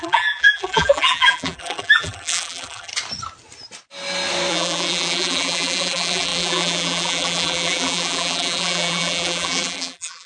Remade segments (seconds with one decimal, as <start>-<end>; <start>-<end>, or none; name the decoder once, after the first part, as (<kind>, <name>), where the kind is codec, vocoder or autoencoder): 0.0-2.9 (vocoder, BigVGAN v2); 4.5-10.3